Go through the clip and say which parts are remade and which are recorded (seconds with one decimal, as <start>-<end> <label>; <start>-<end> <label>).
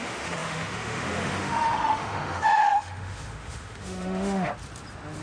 0.0-4.5 remade; 4.5-5.2 recorded